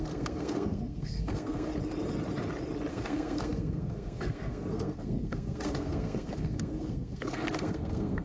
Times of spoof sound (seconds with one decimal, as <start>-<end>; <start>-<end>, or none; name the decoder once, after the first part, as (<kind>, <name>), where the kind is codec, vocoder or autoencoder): 0.0-1.7 (codec, SNAC); 2.9-8.2